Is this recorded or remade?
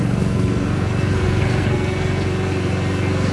remade